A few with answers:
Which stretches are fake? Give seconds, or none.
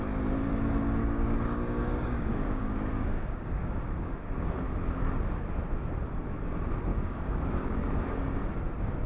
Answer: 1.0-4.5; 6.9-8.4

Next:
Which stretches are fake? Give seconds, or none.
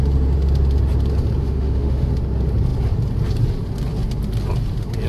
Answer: 1.4-2.1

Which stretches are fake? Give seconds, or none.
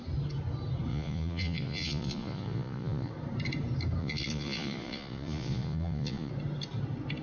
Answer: 0.9-3.1; 4.0-6.3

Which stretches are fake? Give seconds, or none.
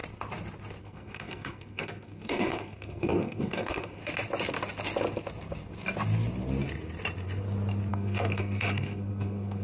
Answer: 0.8-4.0; 7.9-9.6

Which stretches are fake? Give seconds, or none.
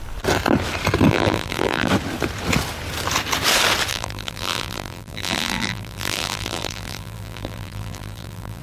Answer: 1.1-1.9; 3.9-8.6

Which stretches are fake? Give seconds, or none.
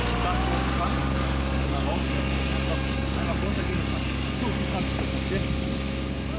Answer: 1.0-4.8